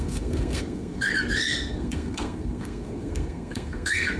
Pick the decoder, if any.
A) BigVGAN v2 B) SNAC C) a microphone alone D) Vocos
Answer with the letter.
B